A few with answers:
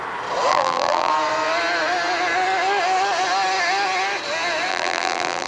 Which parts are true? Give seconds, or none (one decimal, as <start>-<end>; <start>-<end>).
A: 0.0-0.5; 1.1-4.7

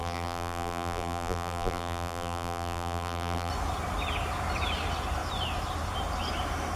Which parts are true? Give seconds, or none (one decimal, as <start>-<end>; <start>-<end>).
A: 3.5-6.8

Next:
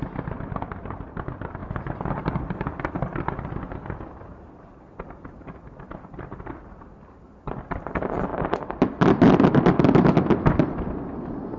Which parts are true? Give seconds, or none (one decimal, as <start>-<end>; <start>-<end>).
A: 0.0-1.6; 2.1-8.3; 11.1-11.6

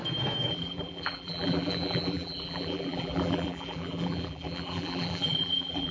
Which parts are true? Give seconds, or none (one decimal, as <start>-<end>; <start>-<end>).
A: 0.0-0.5